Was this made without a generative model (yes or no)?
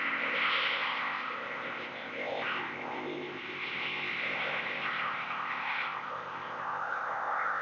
no